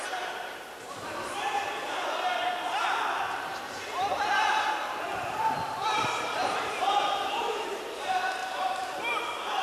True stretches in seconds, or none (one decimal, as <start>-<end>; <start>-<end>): none